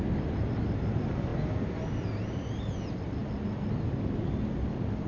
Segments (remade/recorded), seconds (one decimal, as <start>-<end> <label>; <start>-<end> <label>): 0.0-5.1 recorded